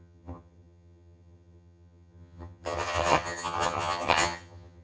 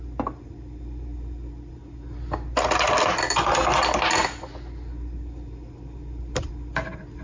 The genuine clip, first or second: second